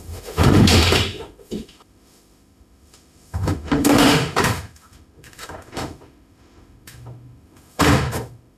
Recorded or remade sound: remade